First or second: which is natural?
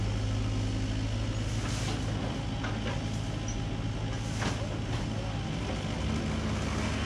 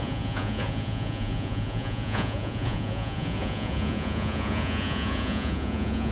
first